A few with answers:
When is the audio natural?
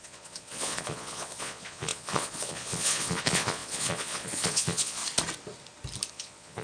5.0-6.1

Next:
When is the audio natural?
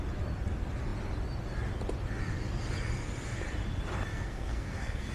0.0-4.1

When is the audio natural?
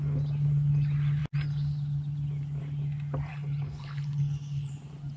0.0-3.3; 4.7-5.2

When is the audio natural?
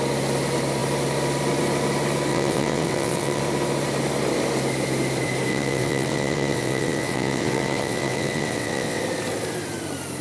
0.0-2.3; 3.4-5.5; 9.0-10.2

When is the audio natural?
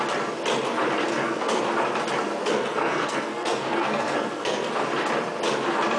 0.0-1.1; 1.6-2.4; 4.7-6.0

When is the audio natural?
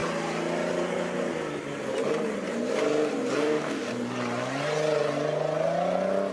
0.0-3.4; 3.9-6.3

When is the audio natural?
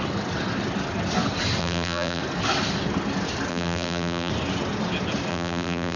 0.0-1.6; 2.2-3.5; 4.3-5.3